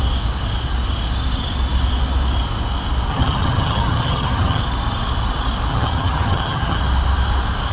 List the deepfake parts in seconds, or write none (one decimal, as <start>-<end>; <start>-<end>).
3.1-4.6; 5.7-6.8